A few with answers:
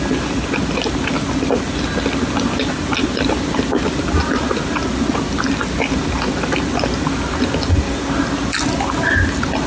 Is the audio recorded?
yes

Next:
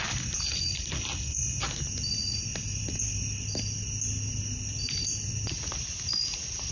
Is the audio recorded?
yes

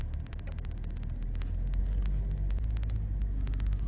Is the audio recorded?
yes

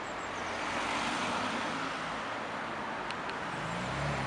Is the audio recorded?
yes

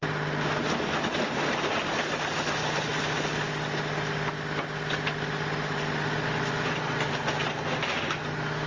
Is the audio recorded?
yes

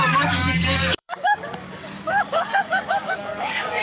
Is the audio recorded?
no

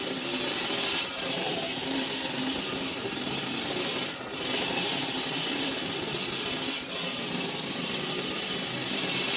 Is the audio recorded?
yes